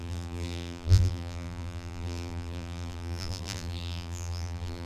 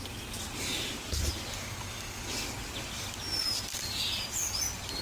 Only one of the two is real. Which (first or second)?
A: second